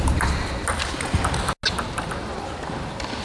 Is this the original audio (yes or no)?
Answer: yes